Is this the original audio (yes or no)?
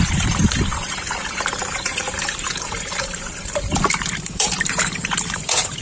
no